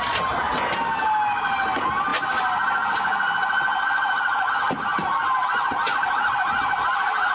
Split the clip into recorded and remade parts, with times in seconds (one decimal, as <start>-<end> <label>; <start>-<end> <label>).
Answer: 0.0-7.3 recorded